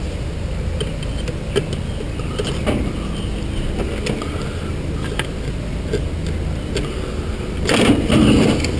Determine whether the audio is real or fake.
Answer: real